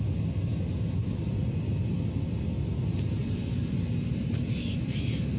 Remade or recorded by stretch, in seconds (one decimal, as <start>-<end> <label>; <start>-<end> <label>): 0.0-5.4 recorded